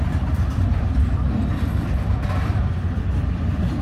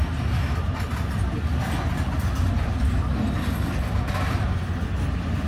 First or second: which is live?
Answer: second